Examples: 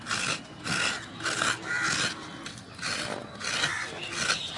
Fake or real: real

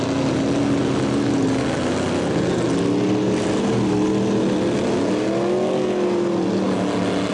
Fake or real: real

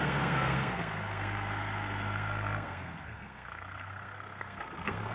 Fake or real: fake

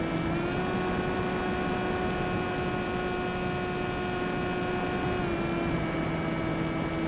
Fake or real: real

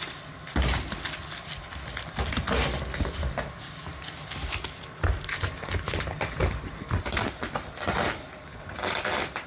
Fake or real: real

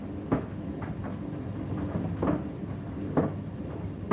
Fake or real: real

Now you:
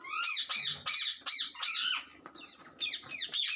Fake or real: real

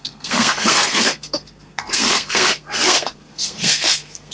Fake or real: fake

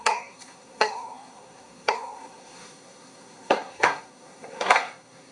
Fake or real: fake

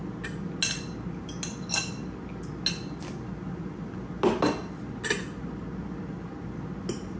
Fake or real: real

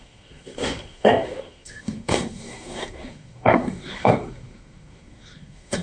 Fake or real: fake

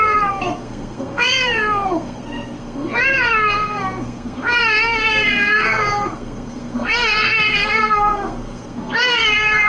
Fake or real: fake